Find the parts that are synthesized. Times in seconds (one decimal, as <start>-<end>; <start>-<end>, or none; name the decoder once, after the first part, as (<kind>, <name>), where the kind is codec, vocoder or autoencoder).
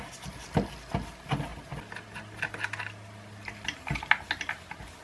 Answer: none